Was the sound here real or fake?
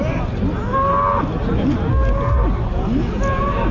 real